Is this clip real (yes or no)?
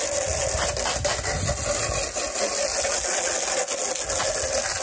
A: yes